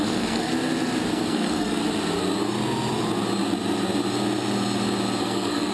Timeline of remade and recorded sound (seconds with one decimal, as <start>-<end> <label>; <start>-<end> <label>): 0.0-0.5 remade; 0.5-1.1 recorded; 1.1-1.8 remade; 1.8-5.2 recorded; 5.2-5.7 remade